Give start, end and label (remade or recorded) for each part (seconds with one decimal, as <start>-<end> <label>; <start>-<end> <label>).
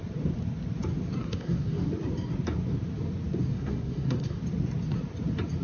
0.0-1.2 recorded; 1.2-1.9 remade; 1.9-3.5 recorded; 3.5-4.4 remade; 4.4-5.6 recorded